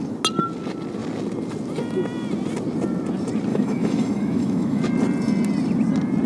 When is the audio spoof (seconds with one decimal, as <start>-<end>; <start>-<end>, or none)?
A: 3.5-4.8